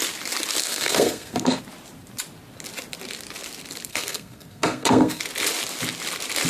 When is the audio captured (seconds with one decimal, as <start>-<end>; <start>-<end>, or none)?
0.0-0.6; 1.6-3.9; 5.2-6.5